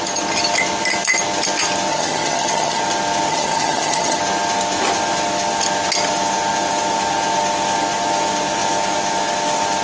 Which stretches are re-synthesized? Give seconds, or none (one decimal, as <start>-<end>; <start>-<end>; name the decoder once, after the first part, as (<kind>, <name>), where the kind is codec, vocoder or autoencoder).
1.9-2.8 (vocoder, HiFi-GAN); 3.3-4.2